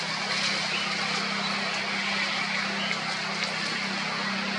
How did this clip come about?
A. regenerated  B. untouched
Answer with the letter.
B